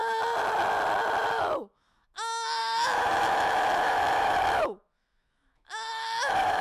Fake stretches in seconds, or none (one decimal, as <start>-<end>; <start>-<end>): 1.3-6.6